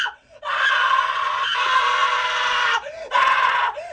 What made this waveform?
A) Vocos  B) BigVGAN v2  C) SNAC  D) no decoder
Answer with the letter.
A